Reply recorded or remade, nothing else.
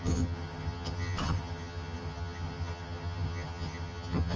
remade